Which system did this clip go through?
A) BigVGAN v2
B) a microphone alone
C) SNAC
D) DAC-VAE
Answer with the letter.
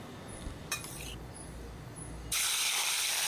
A